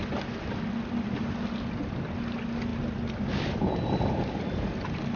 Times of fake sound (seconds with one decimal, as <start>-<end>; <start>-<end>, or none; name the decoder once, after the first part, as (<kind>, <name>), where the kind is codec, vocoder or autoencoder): none